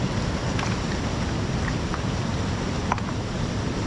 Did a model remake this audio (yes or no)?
no